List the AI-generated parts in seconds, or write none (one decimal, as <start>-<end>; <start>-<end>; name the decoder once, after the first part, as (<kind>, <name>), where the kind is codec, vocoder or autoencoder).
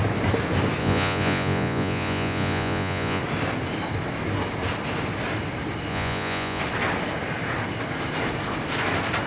0.8-3.2 (vocoder, Vocos); 5.9-6.6